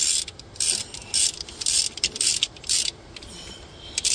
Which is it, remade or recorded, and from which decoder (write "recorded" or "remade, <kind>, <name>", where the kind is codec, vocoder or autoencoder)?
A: remade, vocoder, BigVGAN v2